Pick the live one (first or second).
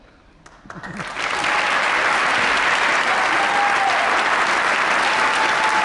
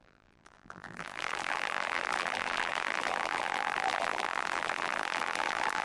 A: first